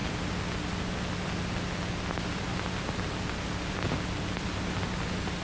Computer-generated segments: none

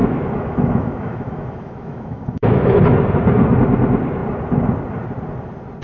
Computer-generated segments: 0.0-2.8 (autoencoder, DAC-VAE)

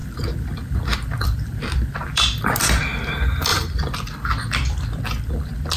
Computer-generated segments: 0.0-3.1 (vocoder, BigVGAN v2); 3.5-5.8

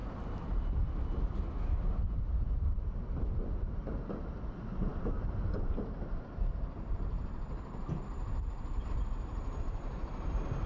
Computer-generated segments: 9.3-10.1 (vocoder, BigVGAN v2)

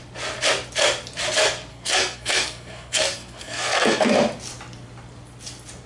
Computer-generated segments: 1.7-4.1 (codec, SNAC)